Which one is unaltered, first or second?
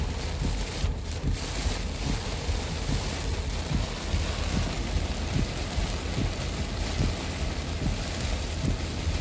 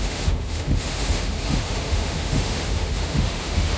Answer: first